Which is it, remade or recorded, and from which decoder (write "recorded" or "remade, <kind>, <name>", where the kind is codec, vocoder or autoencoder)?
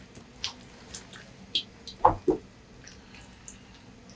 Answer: recorded